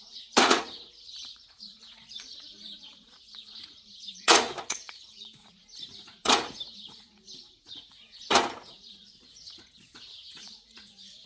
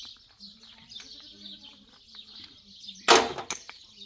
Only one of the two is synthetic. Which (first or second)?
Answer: first